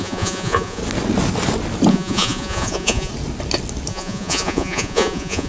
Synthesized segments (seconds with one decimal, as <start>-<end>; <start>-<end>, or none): 0.0-0.8; 1.9-3.1; 3.9-5.5